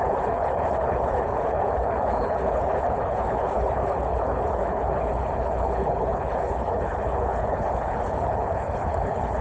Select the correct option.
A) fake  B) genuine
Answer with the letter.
A